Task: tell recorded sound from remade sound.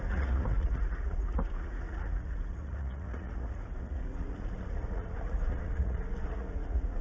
remade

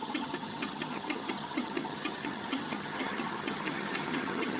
remade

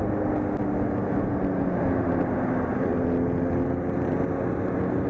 recorded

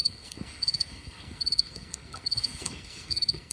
remade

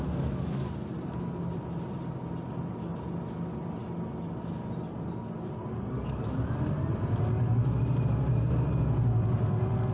recorded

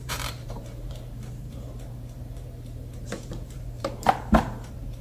remade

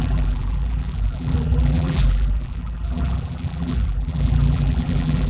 remade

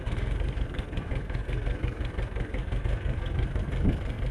remade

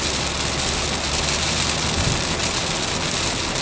recorded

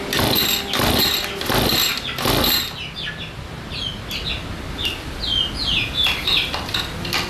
recorded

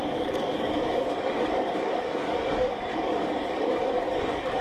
remade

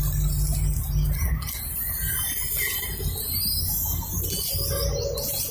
recorded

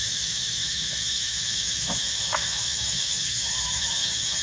remade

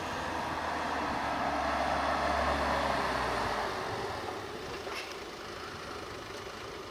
recorded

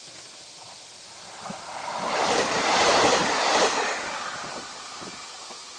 recorded